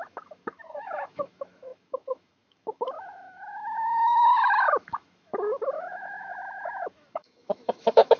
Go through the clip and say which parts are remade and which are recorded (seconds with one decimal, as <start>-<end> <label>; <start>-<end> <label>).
0.0-8.2 remade